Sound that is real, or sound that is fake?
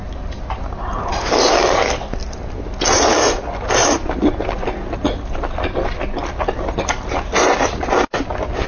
real